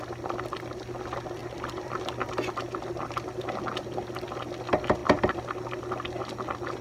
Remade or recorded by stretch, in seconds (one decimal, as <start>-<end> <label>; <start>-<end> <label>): 0.0-1.4 recorded; 1.4-2.2 remade; 2.2-5.0 recorded; 5.0-5.8 remade; 5.8-6.8 recorded